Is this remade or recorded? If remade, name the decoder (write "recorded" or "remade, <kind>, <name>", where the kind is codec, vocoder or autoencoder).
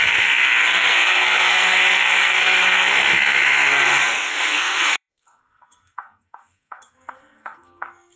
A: remade, codec, SNAC